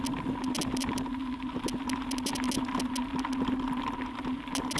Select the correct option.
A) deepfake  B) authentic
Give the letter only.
B